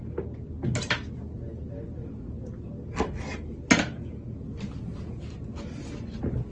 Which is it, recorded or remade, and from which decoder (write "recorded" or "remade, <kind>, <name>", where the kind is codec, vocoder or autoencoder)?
recorded